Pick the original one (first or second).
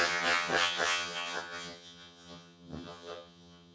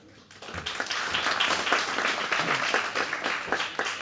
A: second